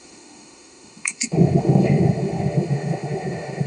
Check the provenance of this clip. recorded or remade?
remade